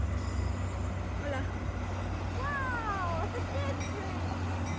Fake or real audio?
real